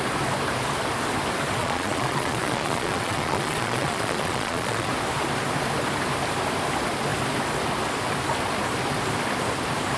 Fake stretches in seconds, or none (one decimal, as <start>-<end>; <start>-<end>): 1.6-4.9